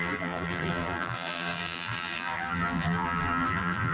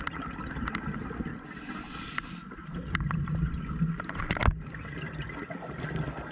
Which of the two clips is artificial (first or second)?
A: first